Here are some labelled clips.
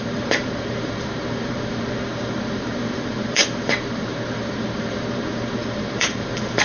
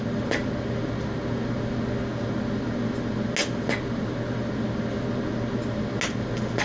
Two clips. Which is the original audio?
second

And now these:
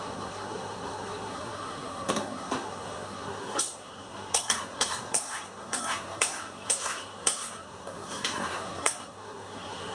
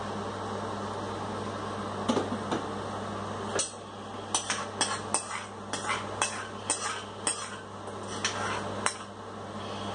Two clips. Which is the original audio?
second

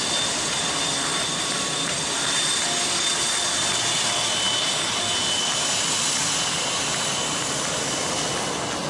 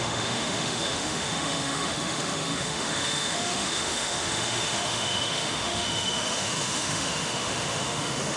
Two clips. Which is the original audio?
first